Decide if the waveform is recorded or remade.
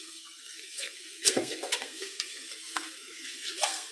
remade